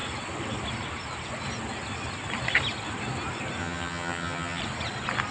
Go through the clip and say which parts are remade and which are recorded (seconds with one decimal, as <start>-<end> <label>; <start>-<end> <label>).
0.0-3.6 recorded; 3.6-4.6 remade; 4.6-5.3 recorded